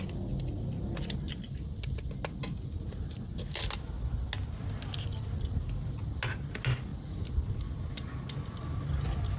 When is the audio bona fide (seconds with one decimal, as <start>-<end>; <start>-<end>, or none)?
0.0-9.4